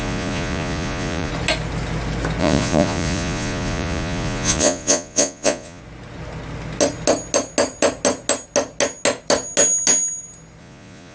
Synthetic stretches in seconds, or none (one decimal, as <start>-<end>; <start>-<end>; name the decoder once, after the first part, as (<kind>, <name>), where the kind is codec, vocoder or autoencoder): 0.0-1.3 (vocoder, Vocos); 2.4-5.8; 10.6-11.1